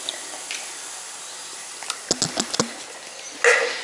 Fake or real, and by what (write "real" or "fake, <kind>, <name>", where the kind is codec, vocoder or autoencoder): real